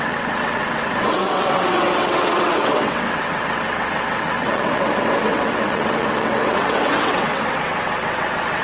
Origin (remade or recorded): remade